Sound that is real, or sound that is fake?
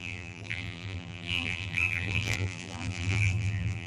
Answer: fake